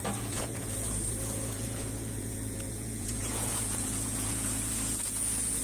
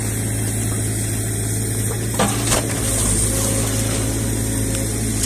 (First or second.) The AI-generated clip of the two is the first